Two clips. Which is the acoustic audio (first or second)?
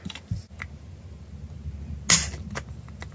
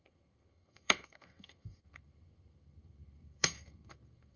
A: first